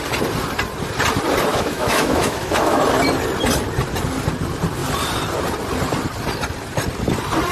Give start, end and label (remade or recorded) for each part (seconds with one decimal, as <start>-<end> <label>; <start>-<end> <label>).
0.0-1.5 recorded; 1.5-2.8 remade; 2.8-7.5 recorded